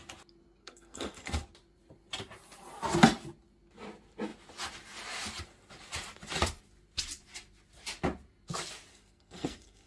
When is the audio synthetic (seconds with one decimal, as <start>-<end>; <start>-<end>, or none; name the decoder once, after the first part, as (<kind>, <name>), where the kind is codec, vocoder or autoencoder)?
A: 0.6-1.4 (codec, SNAC); 8.9-9.9